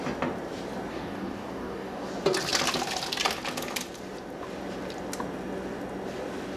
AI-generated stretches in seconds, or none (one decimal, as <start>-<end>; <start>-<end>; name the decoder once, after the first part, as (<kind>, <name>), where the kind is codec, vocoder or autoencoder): 0.9-2.1 (codec, DAC)